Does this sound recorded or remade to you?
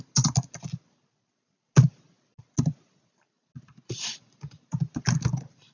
recorded